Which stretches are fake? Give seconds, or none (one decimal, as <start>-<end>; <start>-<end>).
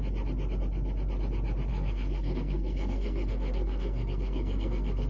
1.7-5.1